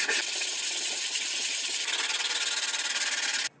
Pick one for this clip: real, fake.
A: real